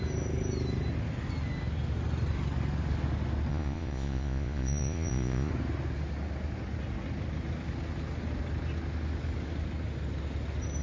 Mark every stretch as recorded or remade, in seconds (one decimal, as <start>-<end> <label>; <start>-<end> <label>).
0.0-3.5 recorded; 3.5-5.5 remade; 5.5-10.8 recorded